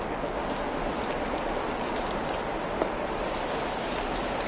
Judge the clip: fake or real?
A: real